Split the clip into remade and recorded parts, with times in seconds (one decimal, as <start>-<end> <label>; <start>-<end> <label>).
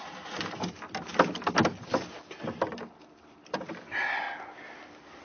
0.0-5.2 recorded